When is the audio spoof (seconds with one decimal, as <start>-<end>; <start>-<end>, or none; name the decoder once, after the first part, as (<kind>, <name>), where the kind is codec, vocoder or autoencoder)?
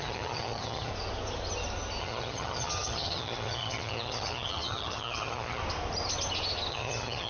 0.0-0.9 (vocoder, HiFi-GAN); 2.0-5.6; 6.7-7.3